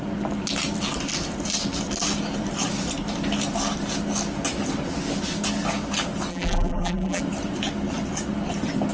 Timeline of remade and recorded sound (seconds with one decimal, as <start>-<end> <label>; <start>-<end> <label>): 0.0-6.3 recorded; 6.3-7.2 remade; 7.2-8.9 recorded